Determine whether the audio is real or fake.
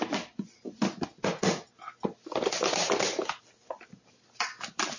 real